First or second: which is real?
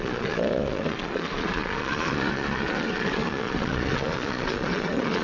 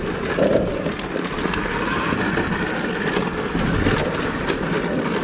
second